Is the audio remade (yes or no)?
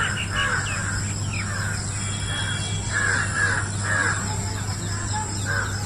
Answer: no